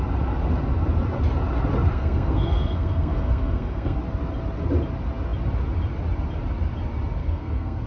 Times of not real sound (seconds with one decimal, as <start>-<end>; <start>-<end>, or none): 1.9-4.0; 7.2-7.9